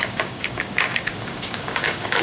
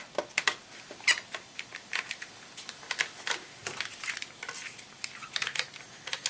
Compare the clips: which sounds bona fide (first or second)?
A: second